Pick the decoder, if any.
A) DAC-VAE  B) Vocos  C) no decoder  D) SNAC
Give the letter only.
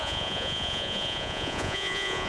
B